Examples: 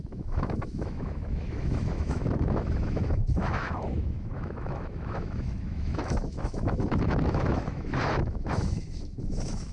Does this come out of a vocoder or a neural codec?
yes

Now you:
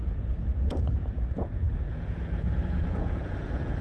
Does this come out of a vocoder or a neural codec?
yes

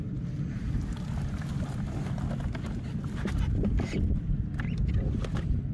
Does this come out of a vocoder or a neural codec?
no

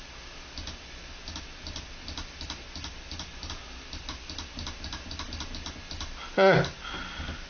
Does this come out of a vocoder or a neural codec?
no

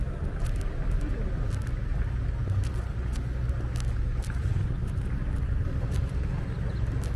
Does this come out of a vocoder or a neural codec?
no